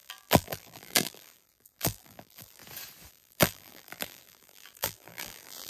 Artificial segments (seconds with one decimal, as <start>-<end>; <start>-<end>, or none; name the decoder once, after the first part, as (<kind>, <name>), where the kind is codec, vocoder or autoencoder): 0.0-2.6 (vocoder, BigVGAN v2); 3.1-5.7